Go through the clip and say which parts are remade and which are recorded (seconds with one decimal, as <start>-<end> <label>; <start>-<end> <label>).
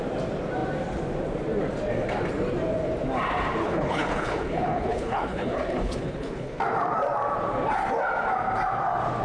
0.0-3.6 recorded; 3.6-6.6 remade; 6.6-9.2 recorded